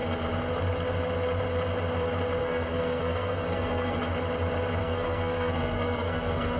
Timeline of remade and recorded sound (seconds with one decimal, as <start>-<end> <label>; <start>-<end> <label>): 0.0-2.4 recorded; 2.4-4.0 remade; 4.0-4.8 recorded; 4.8-6.6 remade